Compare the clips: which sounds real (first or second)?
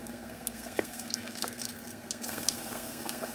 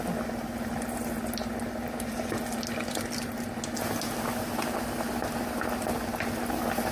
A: second